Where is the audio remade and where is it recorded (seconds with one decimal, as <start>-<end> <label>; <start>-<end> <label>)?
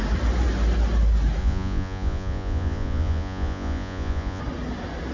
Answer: 0.0-1.4 recorded; 1.4-4.4 remade; 4.4-5.1 recorded